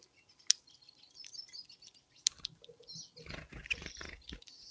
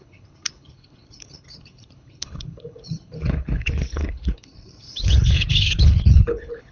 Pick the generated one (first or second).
second